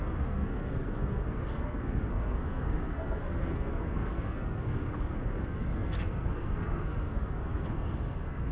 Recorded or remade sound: remade